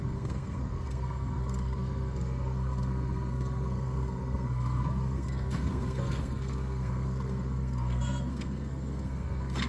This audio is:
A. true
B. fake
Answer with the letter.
B